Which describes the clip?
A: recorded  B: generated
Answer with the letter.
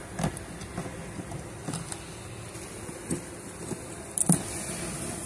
A